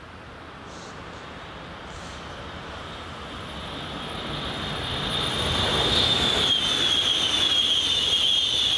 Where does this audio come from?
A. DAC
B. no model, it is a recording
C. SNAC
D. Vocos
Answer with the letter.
B